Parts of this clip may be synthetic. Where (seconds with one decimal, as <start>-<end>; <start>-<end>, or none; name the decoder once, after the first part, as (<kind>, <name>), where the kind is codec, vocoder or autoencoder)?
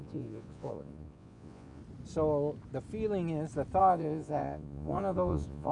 0.0-1.8 (vocoder, Vocos); 3.8-5.7